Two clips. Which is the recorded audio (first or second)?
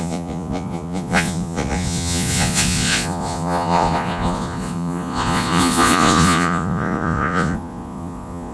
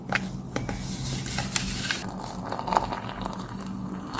second